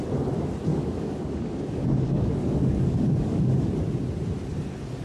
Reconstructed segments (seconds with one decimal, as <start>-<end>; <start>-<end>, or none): 0.7-3.7